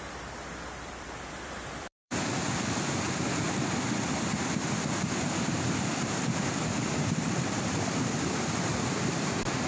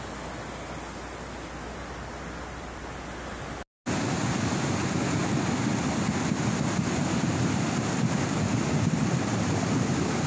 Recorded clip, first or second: second